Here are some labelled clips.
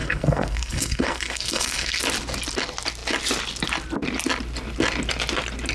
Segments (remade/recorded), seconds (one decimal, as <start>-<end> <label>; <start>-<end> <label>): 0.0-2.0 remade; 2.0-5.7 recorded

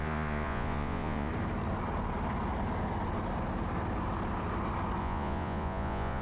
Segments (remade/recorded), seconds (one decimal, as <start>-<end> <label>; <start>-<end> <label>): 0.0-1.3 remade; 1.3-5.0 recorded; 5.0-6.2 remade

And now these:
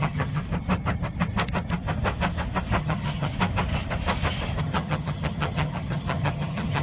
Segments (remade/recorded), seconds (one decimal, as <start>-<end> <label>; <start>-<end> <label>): 0.0-0.4 remade; 0.4-2.8 recorded; 2.8-3.3 remade; 3.3-4.6 recorded; 4.6-6.8 remade